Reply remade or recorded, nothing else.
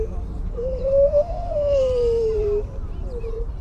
remade